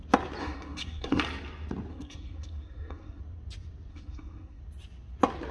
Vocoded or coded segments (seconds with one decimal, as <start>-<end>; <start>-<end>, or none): 0.4-1.2; 1.9-3.2; 3.9-4.6